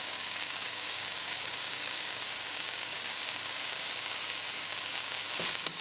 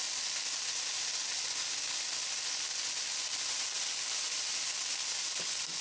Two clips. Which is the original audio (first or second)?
second